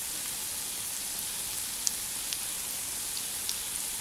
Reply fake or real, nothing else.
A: real